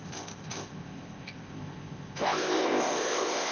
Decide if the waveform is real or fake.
fake